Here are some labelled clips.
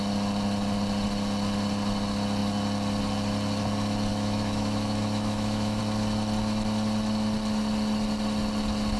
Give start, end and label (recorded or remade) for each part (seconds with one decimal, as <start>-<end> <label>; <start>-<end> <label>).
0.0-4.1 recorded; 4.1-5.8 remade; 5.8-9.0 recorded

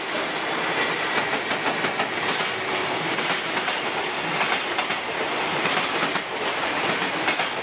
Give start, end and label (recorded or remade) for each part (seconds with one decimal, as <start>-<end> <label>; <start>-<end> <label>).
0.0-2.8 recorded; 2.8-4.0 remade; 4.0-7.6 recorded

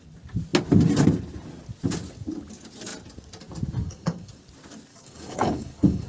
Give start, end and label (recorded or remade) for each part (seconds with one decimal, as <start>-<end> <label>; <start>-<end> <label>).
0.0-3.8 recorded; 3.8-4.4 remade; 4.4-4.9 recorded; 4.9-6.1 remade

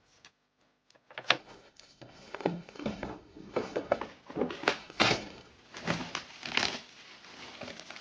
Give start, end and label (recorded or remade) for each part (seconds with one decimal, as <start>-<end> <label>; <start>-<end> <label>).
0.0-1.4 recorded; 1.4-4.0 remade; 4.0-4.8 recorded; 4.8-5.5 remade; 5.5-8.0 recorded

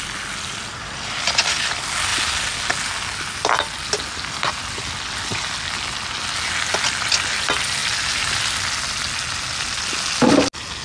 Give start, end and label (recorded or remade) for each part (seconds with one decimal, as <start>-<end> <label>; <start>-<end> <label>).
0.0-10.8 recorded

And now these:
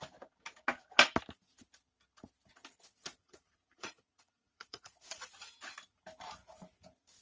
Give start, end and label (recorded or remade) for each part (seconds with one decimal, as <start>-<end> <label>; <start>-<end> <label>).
0.0-3.2 recorded; 3.2-5.3 remade; 5.3-7.2 recorded

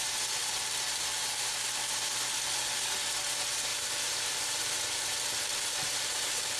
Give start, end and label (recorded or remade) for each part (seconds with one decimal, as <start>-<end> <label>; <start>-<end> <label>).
0.0-0.4 recorded; 0.4-1.6 remade; 1.6-3.7 recorded; 3.7-6.6 remade

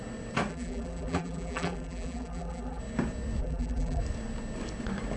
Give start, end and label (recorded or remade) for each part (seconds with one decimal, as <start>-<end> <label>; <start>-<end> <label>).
0.0-0.5 recorded; 0.5-2.8 remade; 2.8-3.4 recorded; 3.4-4.0 remade; 4.0-5.2 recorded